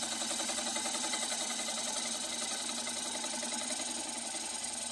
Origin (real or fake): real